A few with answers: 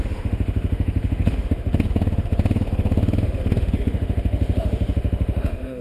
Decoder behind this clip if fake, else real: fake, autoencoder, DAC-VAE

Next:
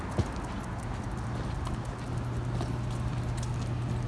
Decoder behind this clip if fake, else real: real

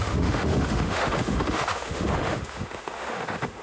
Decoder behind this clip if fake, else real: fake, autoencoder, DAC-VAE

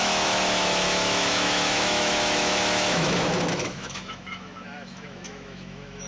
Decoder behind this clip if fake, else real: fake, autoencoder, DAC-VAE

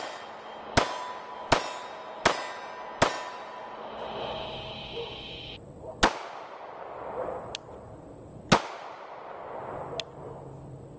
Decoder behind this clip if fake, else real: real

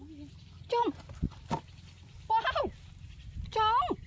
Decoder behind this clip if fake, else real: real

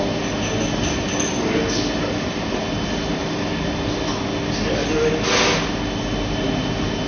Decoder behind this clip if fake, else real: real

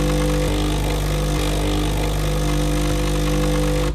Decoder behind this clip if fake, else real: real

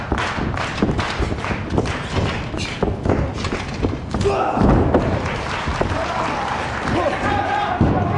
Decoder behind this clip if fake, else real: real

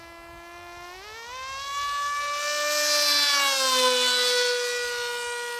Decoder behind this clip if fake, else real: real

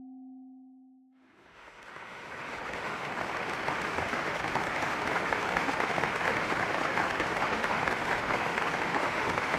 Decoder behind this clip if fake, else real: fake, autoencoder, DAC-VAE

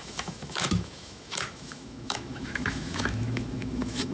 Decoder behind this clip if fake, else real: fake, autoencoder, DAC-VAE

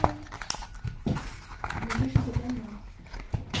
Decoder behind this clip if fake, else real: real